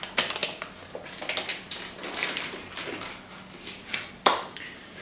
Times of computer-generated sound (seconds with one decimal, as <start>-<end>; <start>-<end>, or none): none